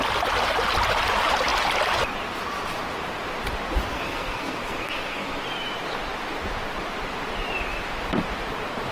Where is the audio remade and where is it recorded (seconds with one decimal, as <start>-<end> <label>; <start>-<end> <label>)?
0.0-3.9 recorded; 3.9-5.4 remade; 5.4-8.9 recorded

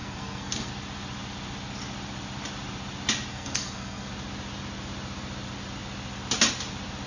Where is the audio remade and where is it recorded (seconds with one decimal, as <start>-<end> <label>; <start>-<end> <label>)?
0.0-0.7 remade; 0.7-3.3 recorded; 3.3-4.1 remade; 4.1-7.1 recorded

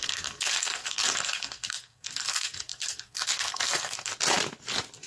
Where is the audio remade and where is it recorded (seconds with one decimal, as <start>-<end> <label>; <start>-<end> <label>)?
0.0-4.1 remade; 4.1-5.1 recorded

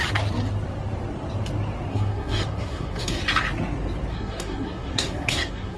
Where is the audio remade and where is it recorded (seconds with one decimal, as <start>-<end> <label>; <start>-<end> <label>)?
0.0-1.9 recorded; 1.9-3.2 remade; 3.2-4.1 recorded; 4.1-5.8 remade

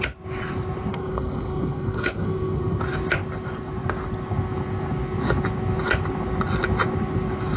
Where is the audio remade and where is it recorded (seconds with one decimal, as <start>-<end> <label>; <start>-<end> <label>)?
0.0-0.9 recorded; 0.9-2.8 remade; 2.8-7.6 recorded

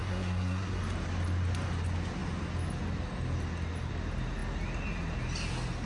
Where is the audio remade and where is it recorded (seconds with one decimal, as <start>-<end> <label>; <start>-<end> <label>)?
0.0-0.8 remade; 0.8-5.9 recorded

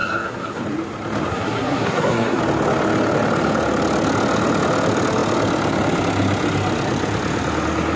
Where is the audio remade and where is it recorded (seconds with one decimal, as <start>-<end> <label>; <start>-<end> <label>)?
0.0-0.6 remade; 0.6-1.3 recorded; 1.3-2.4 remade; 2.4-8.0 recorded

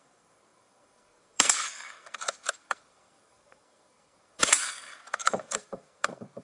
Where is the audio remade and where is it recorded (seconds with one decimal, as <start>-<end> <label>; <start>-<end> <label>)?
0.0-6.4 remade